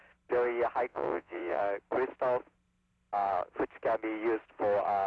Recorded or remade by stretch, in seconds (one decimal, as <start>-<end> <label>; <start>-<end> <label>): 0.0-0.9 recorded; 0.9-1.6 remade; 1.6-5.1 recorded